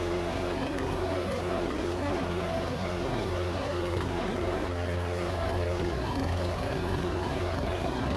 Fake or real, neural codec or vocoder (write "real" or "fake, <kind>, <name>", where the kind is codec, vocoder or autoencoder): fake, codec, SNAC